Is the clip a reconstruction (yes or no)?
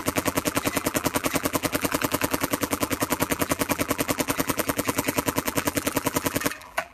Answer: yes